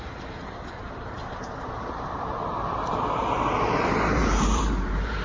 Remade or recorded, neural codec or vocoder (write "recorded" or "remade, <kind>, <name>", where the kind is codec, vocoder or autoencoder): remade, vocoder, BigVGAN v2